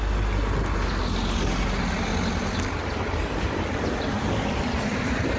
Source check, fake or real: real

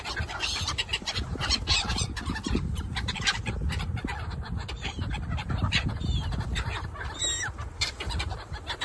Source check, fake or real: real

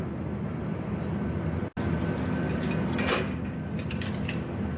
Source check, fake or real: real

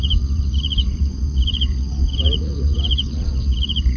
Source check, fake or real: fake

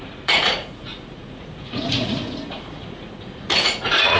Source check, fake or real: fake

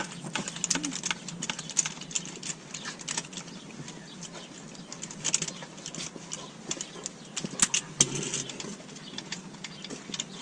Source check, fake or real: real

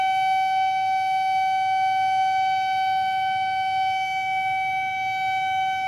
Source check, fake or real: real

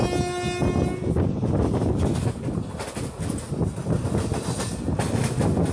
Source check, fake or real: real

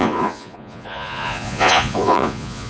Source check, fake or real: fake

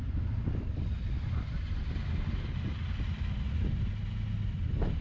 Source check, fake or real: real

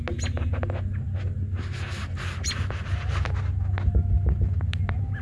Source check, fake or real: real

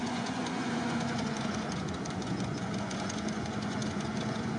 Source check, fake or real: fake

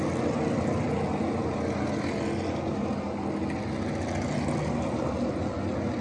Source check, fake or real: real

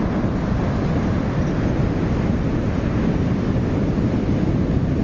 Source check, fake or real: real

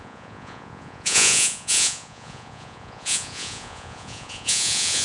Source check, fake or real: fake